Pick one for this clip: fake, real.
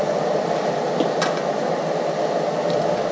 real